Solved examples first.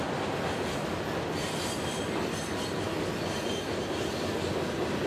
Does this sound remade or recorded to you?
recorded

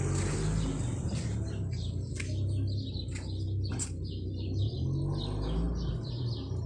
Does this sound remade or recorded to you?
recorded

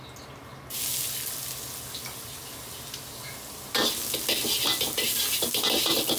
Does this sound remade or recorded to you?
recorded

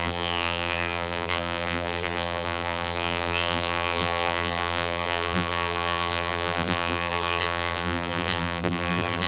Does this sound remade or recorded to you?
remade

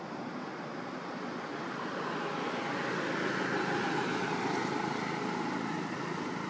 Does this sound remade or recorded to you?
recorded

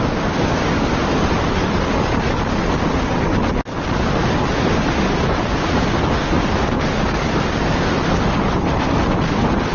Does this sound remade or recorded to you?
recorded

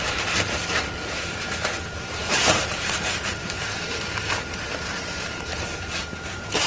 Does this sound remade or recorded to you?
remade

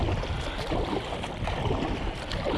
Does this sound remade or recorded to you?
recorded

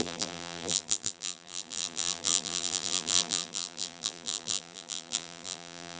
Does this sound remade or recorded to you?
remade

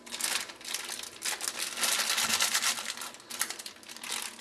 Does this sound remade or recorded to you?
recorded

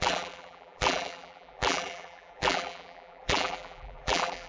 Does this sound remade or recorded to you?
remade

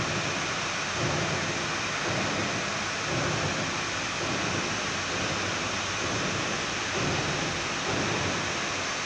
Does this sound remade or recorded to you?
recorded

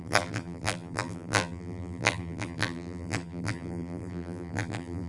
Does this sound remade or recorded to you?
remade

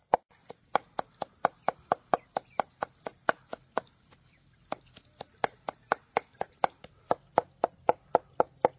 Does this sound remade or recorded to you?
remade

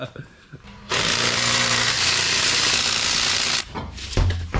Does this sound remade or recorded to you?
remade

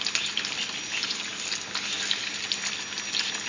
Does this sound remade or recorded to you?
recorded